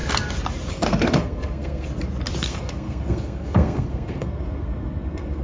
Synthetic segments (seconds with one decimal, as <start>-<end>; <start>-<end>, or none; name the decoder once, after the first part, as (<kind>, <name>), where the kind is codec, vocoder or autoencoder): 0.7-1.9 (codec, SNAC); 2.4-5.4